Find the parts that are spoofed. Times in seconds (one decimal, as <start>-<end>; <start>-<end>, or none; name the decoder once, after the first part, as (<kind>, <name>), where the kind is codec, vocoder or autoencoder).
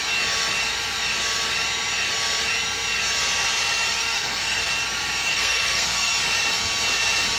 4.0-4.7 (codec, SNAC); 5.3-6.1